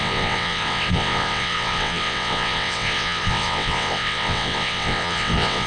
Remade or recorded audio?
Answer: remade